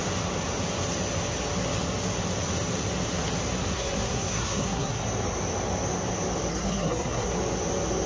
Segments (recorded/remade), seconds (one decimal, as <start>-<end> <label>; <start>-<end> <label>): 0.0-3.7 recorded; 3.7-5.0 remade; 5.0-6.5 recorded; 6.5-7.3 remade; 7.3-8.1 recorded